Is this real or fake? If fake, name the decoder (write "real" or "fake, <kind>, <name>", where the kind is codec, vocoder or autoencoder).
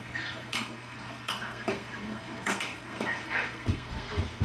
fake, codec, SNAC